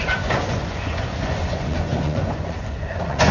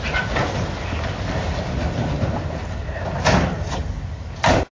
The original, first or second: second